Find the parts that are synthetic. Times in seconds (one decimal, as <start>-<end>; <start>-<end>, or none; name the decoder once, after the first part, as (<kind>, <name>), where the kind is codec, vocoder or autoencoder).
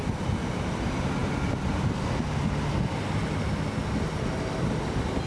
none